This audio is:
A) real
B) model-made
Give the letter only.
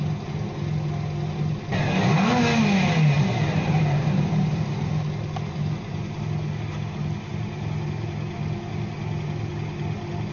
A